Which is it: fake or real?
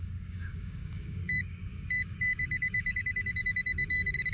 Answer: fake